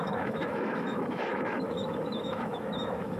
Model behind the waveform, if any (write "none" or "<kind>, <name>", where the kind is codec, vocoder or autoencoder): autoencoder, DAC-VAE